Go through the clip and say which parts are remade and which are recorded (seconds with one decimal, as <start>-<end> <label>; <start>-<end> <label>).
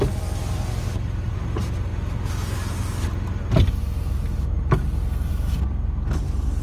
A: 0.0-6.6 recorded